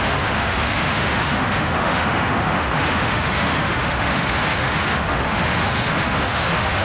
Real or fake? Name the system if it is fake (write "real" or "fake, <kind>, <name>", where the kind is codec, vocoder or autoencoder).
fake, autoencoder, DAC-VAE